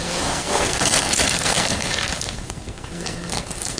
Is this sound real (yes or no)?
no